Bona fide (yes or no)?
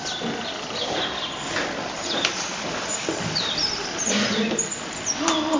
yes